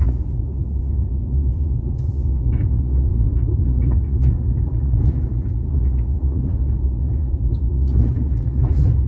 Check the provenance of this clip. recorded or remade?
remade